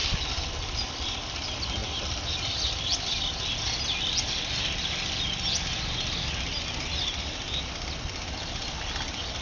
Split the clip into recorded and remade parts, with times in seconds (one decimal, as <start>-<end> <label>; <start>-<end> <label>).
0.0-9.4 recorded